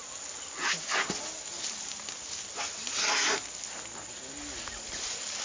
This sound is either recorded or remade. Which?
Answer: recorded